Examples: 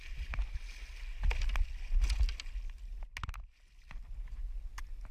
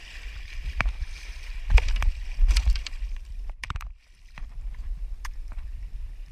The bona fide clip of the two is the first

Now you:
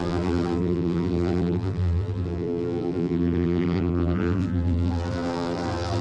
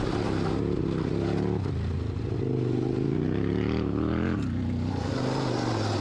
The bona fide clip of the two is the second